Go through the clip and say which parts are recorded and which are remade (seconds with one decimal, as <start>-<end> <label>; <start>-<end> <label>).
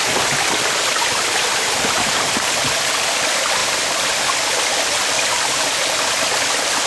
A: 0.0-0.9 recorded; 0.9-2.4 remade; 2.4-6.9 recorded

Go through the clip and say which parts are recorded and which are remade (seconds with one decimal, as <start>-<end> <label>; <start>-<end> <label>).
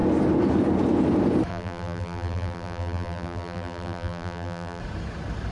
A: 0.0-1.5 recorded; 1.5-4.8 remade; 4.8-5.5 recorded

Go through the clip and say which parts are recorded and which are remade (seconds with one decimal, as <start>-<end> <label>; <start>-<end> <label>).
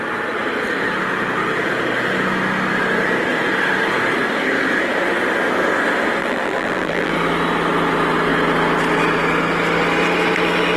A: 0.0-6.2 recorded; 6.2-7.1 remade; 7.1-10.8 recorded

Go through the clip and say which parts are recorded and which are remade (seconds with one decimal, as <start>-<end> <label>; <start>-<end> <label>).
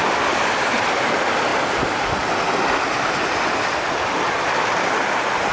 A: 0.0-5.5 recorded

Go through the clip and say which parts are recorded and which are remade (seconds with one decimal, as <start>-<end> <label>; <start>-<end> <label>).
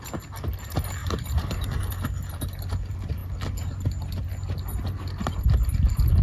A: 0.0-1.0 recorded; 1.0-1.8 remade; 1.8-6.2 recorded